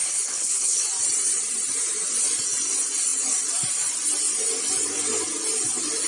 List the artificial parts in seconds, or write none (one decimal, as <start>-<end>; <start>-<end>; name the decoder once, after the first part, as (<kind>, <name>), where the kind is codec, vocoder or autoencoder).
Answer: 0.0-0.8 (codec, HILCodec)